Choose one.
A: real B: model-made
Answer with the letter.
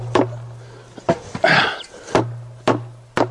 A